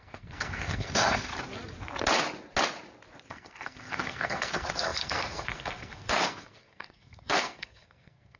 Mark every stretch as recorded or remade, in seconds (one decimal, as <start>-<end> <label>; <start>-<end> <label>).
0.0-1.3 remade; 1.3-3.3 recorded; 3.3-8.4 remade